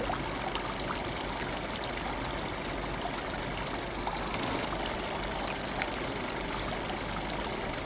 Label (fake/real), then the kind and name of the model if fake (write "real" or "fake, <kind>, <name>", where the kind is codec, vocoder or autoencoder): real